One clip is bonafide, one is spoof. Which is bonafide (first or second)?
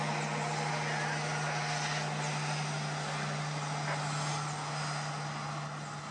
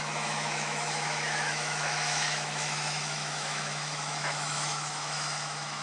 first